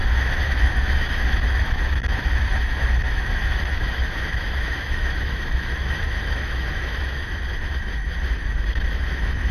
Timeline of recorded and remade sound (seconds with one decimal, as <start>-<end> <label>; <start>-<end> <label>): 0.0-9.5 remade